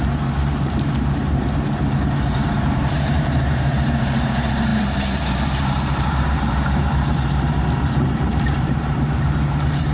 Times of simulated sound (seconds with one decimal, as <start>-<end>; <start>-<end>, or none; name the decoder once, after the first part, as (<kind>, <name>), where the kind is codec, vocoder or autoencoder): 0.0-9.9 (vocoder, BigVGAN v2)